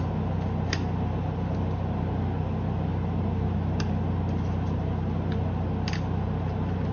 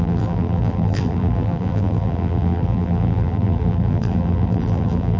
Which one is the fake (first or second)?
second